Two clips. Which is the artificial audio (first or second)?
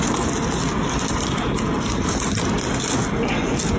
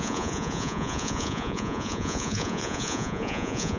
second